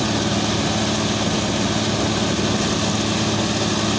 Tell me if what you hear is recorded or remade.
recorded